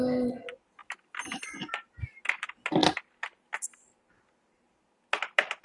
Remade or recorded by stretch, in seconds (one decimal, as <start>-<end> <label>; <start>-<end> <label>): 0.0-0.8 recorded; 0.8-1.8 remade; 1.8-5.6 recorded